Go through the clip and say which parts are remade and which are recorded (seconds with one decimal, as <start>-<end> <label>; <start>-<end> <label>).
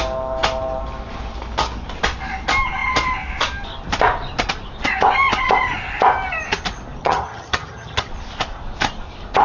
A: 0.0-7.0 recorded; 7.0-8.1 remade; 8.1-9.4 recorded